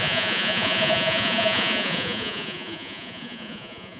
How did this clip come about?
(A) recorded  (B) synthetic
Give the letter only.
B